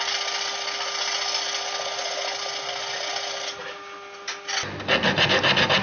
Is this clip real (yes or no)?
yes